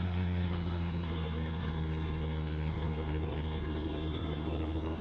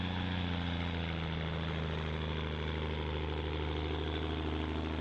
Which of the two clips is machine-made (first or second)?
first